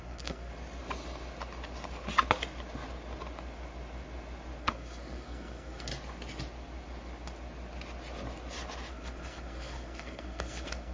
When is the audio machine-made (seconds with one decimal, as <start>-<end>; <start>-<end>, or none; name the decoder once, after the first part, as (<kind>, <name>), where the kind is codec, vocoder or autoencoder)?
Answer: 0.0-0.5 (codec, SNAC); 4.6-5.9; 8.9-10.9

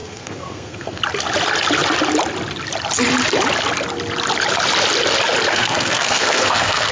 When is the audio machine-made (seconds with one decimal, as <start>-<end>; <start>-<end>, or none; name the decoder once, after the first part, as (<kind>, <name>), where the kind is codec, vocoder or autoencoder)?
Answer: 0.0-1.0 (codec, SNAC); 5.5-6.9

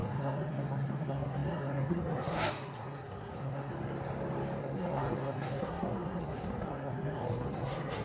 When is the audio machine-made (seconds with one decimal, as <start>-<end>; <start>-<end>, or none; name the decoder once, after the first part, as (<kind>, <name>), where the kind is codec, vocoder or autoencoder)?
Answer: 0.0-3.7 (codec, SNAC); 4.6-8.0

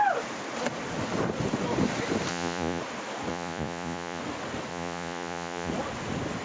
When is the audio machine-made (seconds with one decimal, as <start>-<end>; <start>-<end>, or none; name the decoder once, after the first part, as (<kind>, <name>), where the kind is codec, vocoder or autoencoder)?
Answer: 2.3-2.8 (vocoder, Vocos); 3.3-4.2; 4.7-5.7

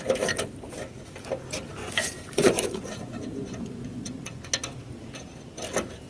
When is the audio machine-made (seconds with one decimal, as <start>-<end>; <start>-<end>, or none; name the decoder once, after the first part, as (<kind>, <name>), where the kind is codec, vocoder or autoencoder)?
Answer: 1.8-4.5 (vocoder, Vocos)

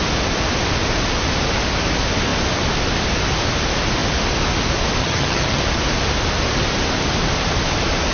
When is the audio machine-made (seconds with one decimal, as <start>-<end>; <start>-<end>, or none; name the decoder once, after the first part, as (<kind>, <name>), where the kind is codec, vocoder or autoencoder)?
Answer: 5.0-5.6 (vocoder, HiFi-GAN)